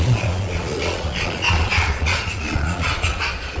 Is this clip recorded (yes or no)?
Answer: no